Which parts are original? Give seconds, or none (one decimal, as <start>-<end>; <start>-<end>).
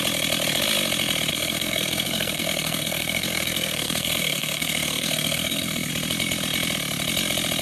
0.0-1.3; 5.9-7.6